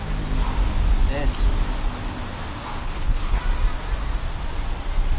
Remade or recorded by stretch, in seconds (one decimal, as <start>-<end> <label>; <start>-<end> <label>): 0.0-2.8 recorded; 2.8-3.4 remade; 3.4-5.2 recorded